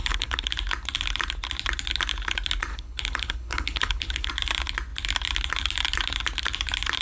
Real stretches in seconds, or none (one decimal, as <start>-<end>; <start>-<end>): 0.5-2.7; 4.3-7.0